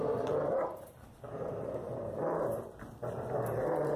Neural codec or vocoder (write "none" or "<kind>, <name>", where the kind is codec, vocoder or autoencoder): vocoder, BigVGAN v2